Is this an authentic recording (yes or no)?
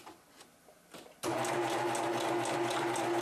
yes